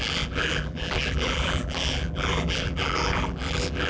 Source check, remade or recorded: remade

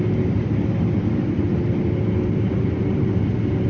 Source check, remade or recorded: recorded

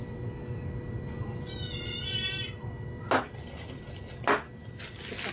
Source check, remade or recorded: recorded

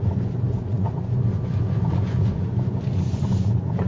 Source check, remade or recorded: remade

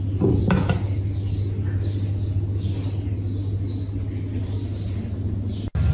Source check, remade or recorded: recorded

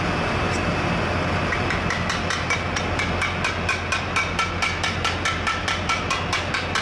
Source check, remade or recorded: recorded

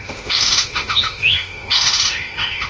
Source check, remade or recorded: remade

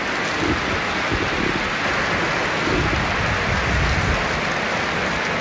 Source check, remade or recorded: recorded